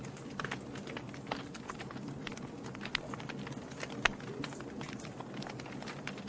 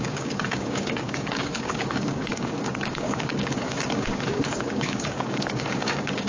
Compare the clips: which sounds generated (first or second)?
second